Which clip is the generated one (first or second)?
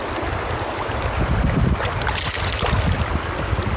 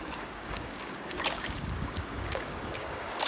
second